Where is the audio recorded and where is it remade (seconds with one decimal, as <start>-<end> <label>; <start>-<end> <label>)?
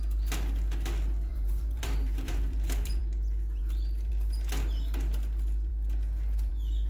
0.0-1.3 recorded; 1.3-3.0 remade; 3.0-6.9 recorded